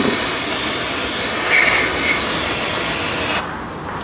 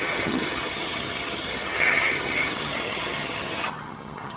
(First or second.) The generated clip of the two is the second